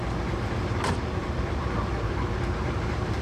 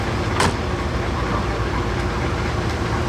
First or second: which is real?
second